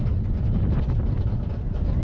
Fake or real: real